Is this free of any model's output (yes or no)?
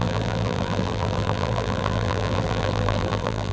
no